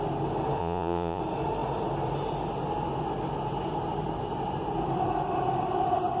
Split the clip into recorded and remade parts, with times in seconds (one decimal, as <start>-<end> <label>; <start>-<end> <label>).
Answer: 0.0-0.6 recorded; 0.6-1.2 remade; 1.2-6.2 recorded